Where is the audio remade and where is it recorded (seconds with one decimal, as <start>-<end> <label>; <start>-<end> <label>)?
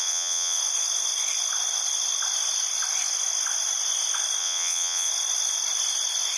0.0-0.6 remade; 0.6-4.4 recorded; 4.4-5.1 remade; 5.1-6.4 recorded